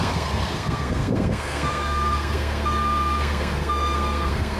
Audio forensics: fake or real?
fake